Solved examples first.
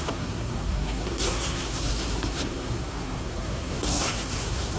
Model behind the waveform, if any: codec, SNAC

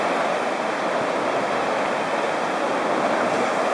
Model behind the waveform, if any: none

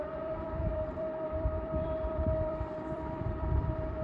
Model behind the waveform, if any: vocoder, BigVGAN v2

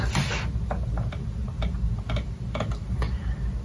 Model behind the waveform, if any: none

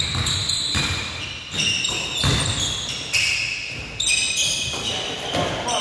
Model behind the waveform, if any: none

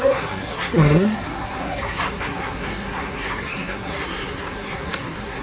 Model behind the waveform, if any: codec, SNAC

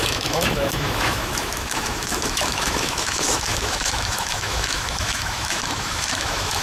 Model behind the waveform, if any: autoencoder, DAC-VAE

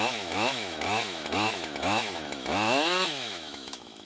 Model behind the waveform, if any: autoencoder, DAC-VAE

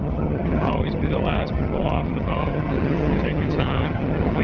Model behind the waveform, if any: vocoder, HiFi-GAN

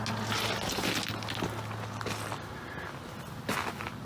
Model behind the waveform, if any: none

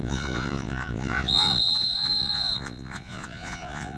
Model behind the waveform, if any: vocoder, Vocos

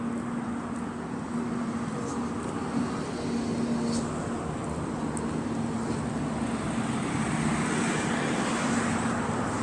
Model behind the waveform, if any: none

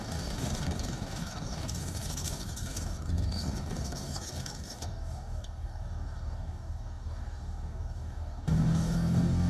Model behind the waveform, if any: codec, DAC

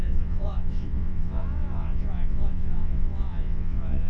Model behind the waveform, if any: vocoder, WaveNeXt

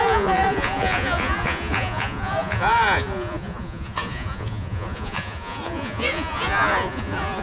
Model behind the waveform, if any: vocoder, Vocos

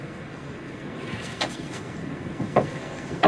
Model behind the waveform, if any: codec, SNAC